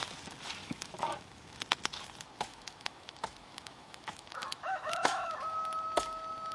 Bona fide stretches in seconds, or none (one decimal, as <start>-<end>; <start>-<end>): 0.0-0.6; 1.6-2.5; 5.3-6.5